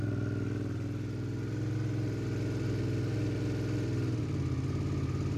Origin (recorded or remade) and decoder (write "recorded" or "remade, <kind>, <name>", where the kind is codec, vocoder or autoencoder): recorded